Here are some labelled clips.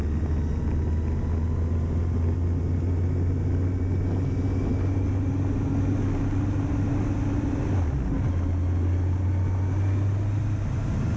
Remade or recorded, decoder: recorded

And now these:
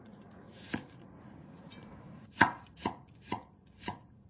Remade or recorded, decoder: remade, vocoder, Vocos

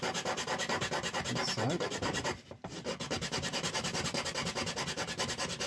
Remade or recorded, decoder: remade, vocoder, BigVGAN v2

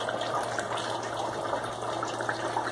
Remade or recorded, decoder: recorded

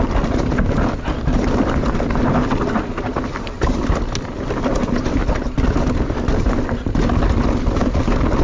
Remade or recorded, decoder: recorded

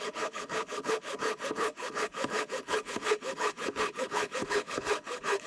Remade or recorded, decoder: remade, codec, HILCodec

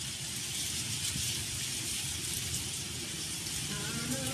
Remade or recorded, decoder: remade, vocoder, BigVGAN v2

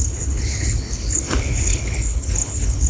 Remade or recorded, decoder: remade, codec, HILCodec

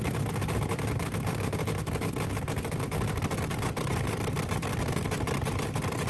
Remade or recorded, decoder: recorded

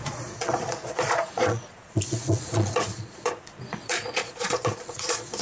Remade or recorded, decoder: remade, vocoder, Vocos